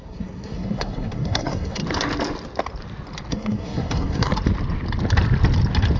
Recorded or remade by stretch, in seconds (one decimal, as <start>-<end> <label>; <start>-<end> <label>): 0.0-1.8 remade; 1.8-3.3 recorded; 3.3-4.3 remade; 4.3-6.0 recorded